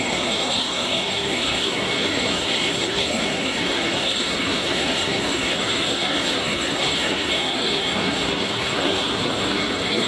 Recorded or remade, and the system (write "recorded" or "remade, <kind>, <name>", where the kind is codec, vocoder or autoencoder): remade, codec, SNAC